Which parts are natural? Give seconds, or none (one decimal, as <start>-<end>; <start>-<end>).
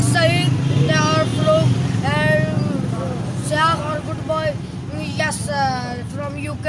0.0-6.7